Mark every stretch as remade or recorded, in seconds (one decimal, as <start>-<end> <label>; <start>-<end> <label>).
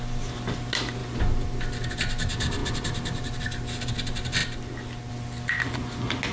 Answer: 0.0-1.0 recorded; 1.0-1.8 remade; 1.8-2.6 recorded; 2.6-3.4 remade; 3.4-6.3 recorded